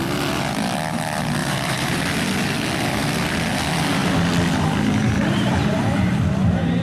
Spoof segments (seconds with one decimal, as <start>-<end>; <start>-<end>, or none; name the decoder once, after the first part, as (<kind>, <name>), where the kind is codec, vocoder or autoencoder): 1.4-2.0 (vocoder, BigVGAN v2); 5.0-5.8